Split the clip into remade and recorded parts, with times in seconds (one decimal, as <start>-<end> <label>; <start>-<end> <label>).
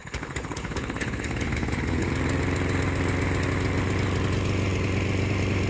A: 0.0-2.1 remade; 2.1-5.7 recorded